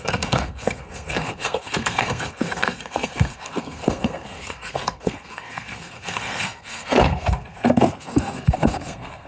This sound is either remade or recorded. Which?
remade